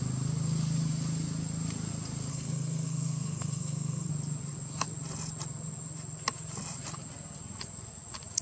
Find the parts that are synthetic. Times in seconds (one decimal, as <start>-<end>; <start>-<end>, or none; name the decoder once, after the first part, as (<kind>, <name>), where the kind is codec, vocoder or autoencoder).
2.3-4.1 (codec, SNAC)